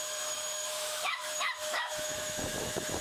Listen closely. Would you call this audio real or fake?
fake